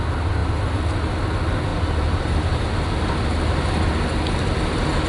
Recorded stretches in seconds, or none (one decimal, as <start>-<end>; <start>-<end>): 0.0-1.7; 2.6-5.1